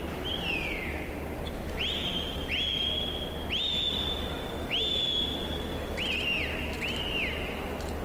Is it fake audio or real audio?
real